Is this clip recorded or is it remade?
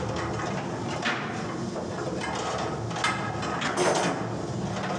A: recorded